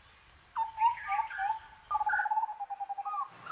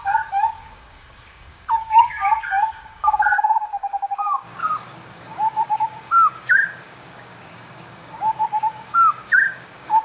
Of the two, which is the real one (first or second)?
first